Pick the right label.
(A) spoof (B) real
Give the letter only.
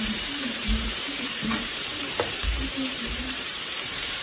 A